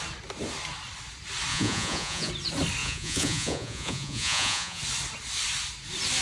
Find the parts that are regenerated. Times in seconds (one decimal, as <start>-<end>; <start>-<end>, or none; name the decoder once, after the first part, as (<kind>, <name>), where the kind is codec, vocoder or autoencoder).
1.5-2.3 (vocoder, Vocos); 2.8-4.8